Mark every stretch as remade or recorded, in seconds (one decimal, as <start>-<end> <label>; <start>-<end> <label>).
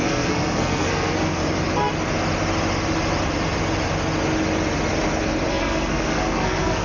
0.0-1.4 remade; 1.4-5.5 recorded; 5.5-6.8 remade